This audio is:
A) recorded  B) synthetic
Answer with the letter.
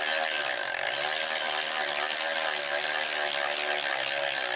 A